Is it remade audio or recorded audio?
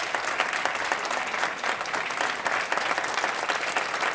recorded